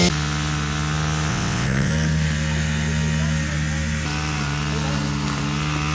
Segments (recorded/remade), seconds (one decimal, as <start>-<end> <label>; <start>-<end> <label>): 0.0-1.3 recorded; 1.3-1.9 remade; 1.9-5.9 recorded